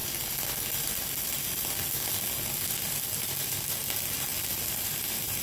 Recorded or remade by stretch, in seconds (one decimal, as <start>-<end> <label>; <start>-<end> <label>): 0.0-5.4 recorded